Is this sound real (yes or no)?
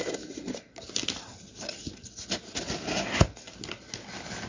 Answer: yes